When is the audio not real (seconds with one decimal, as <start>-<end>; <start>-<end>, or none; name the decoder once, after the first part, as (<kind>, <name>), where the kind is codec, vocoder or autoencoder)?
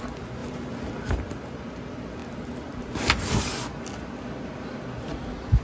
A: none